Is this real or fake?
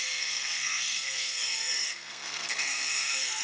fake